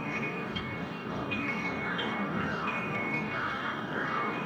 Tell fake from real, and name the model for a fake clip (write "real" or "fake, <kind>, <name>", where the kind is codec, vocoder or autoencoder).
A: fake, codec, DAC